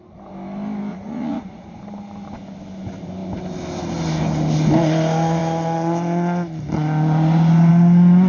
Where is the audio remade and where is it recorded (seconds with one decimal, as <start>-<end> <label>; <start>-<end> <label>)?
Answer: 0.0-0.9 recorded; 0.9-1.8 remade; 1.8-8.3 recorded